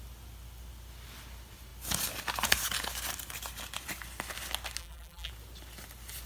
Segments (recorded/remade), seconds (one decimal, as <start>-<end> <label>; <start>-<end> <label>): 0.0-4.8 recorded; 4.8-5.3 remade; 5.3-6.3 recorded